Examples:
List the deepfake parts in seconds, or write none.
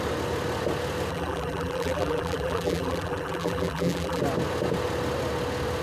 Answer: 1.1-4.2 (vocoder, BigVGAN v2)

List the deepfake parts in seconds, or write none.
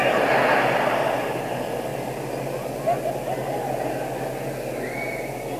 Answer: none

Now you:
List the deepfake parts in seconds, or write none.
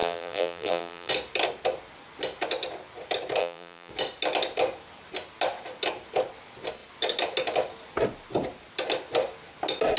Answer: 0.0-1.1 (vocoder, BigVGAN v2); 3.4-3.9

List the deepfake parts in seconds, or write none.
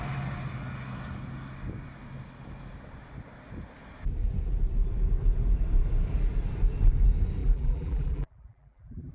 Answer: 7.4-9.1 (vocoder, BigVGAN v2)